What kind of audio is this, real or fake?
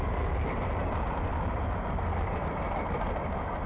real